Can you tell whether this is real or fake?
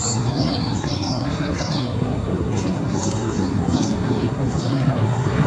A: fake